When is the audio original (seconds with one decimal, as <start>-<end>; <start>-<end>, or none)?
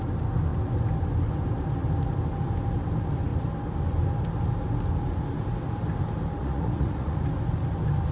0.0-6.4; 7.2-8.1